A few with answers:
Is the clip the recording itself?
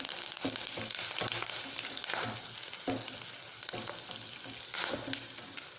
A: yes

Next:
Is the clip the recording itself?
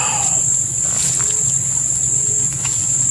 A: yes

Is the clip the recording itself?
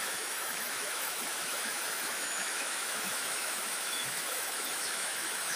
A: no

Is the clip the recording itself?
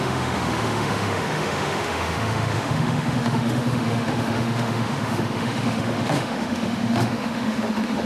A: no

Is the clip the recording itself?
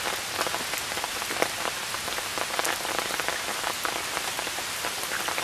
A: yes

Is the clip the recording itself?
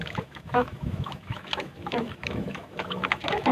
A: no